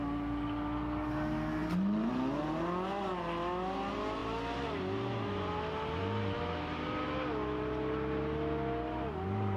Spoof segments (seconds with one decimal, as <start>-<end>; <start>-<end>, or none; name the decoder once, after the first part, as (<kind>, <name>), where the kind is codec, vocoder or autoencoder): none